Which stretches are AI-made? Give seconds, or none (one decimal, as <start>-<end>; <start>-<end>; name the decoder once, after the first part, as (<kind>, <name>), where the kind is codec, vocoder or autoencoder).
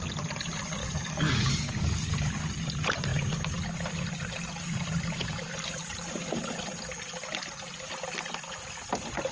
0.8-2.1 (codec, DAC)